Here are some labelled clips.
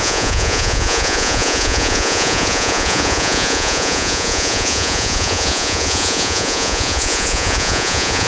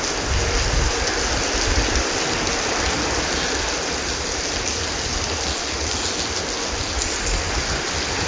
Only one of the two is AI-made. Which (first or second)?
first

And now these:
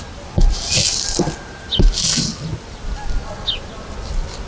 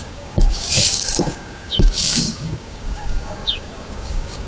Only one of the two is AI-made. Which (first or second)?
second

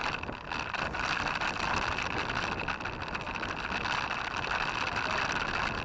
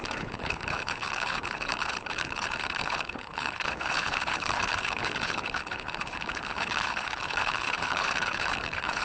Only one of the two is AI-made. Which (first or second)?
second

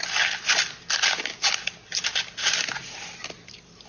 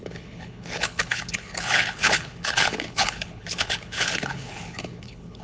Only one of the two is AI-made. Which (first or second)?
second